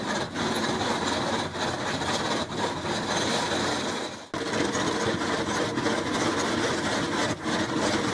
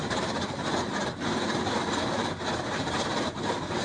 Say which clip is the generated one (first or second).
second